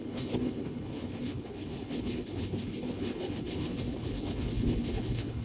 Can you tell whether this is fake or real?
fake